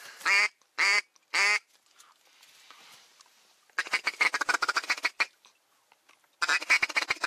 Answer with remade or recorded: recorded